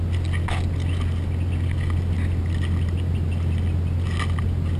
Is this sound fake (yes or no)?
no